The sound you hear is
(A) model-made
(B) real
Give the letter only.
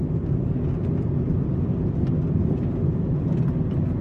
B